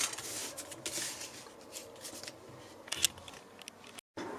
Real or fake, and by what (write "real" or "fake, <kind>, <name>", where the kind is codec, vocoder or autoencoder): real